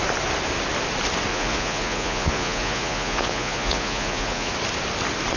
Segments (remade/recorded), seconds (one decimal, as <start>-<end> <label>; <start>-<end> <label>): 0.0-1.3 recorded; 1.3-4.5 remade; 4.5-5.4 recorded